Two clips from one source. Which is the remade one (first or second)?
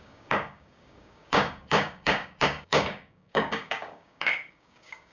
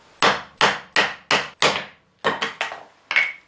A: first